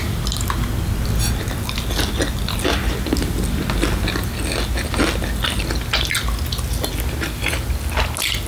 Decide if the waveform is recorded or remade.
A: recorded